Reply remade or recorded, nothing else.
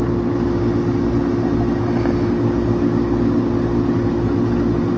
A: recorded